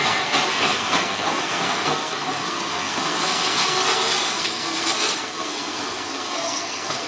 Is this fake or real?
fake